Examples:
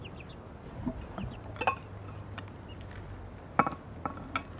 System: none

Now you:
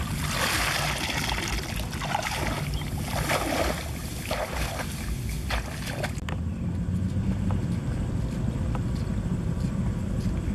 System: none